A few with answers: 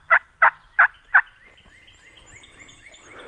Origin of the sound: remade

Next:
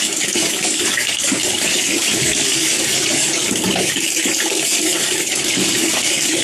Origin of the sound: remade